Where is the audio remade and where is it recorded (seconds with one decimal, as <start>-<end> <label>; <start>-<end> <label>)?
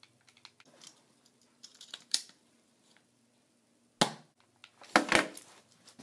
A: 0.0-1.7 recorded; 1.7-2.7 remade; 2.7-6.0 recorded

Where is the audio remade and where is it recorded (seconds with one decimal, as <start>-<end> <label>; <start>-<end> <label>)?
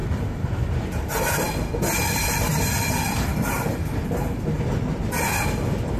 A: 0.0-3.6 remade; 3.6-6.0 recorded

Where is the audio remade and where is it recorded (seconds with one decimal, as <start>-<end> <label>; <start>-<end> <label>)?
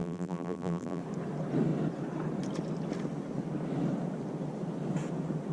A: 0.0-1.0 remade; 1.0-5.5 recorded